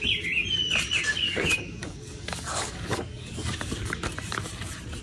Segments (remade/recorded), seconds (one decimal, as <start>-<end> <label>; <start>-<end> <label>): 0.0-1.1 recorded; 1.1-4.1 remade; 4.1-5.0 recorded